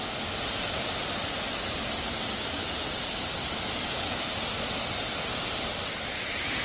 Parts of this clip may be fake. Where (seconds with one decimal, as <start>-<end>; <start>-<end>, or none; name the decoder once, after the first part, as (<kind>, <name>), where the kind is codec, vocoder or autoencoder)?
none